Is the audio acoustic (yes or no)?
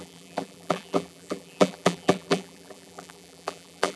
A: no